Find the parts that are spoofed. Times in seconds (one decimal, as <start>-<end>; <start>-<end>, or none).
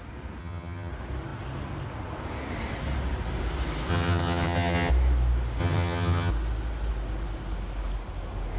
0.4-0.9; 3.9-4.9; 5.6-6.3